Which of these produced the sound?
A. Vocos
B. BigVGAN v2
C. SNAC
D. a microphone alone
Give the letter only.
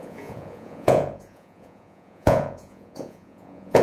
A